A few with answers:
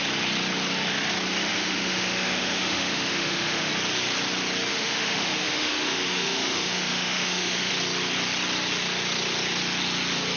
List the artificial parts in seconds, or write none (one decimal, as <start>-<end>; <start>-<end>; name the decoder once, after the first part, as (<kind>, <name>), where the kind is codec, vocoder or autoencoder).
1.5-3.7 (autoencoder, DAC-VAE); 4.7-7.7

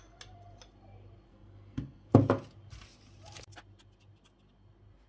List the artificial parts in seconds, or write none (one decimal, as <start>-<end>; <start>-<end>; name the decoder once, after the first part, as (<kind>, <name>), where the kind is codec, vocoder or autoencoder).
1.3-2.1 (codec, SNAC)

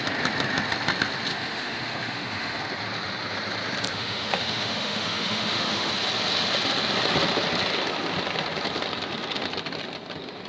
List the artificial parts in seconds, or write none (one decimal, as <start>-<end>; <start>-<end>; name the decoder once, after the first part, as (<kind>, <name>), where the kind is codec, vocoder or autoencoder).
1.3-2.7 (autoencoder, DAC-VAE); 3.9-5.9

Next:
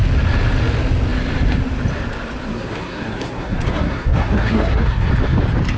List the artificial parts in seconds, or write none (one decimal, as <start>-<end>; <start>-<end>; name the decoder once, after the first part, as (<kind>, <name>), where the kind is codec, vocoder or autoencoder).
2.4-5.1 (codec, SNAC)